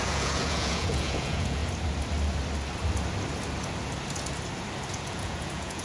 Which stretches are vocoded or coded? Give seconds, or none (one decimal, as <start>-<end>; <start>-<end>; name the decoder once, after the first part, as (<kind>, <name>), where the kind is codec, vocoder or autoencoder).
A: 0.0-1.6 (vocoder, Vocos); 4.9-5.8